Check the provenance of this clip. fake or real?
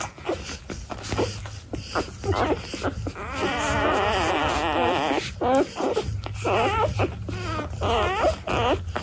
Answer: real